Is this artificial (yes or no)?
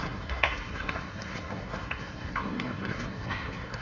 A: yes